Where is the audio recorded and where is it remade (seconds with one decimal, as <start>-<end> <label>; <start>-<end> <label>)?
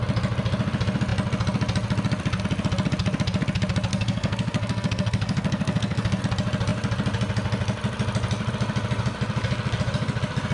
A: 0.0-3.9 recorded; 3.9-6.2 remade; 6.2-10.5 recorded